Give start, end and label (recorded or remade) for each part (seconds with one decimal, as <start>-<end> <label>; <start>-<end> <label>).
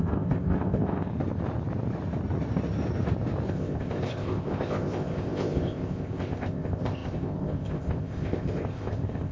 0.0-1.1 remade; 1.1-3.5 recorded; 3.5-9.3 remade